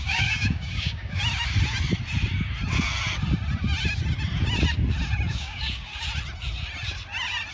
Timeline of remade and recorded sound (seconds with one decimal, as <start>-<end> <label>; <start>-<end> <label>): 0.0-1.2 remade; 1.2-5.3 recorded; 5.3-5.9 remade; 5.9-7.5 recorded